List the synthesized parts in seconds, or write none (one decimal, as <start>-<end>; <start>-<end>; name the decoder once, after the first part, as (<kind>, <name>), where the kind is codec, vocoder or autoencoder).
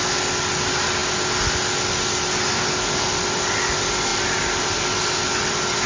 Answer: 4.1-4.8 (vocoder, BigVGAN v2)